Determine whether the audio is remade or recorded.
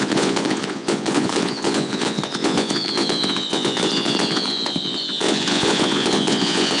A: remade